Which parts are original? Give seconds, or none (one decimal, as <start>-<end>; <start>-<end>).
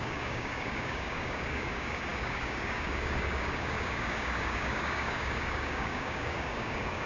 none